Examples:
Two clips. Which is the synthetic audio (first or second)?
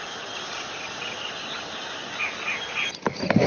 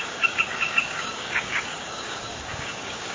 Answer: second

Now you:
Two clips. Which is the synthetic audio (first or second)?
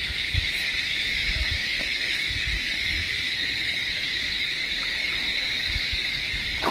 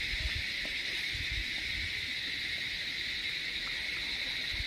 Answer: first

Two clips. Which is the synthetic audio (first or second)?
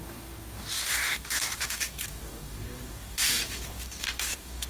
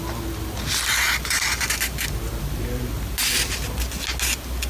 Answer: first